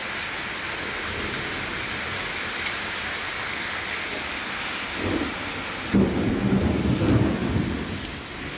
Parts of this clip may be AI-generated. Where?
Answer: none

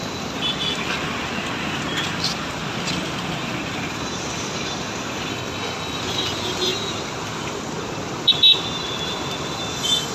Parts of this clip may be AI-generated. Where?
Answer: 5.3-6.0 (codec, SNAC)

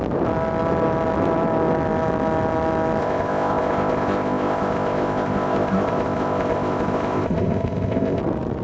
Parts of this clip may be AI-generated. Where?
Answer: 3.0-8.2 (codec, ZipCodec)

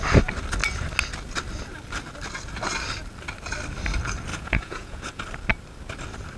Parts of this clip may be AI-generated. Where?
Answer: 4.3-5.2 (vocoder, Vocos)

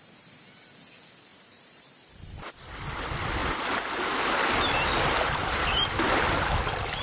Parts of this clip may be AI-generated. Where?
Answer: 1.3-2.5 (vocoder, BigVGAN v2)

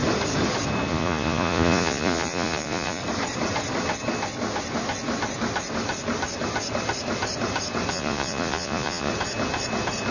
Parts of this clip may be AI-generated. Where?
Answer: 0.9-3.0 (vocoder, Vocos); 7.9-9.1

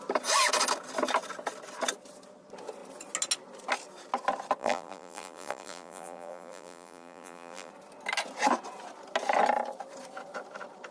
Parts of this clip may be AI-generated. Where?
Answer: 4.6-7.7 (vocoder, BigVGAN v2)

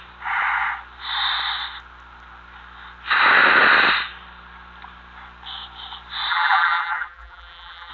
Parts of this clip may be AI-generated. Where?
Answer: 6.3-7.9 (vocoder, BigVGAN v2)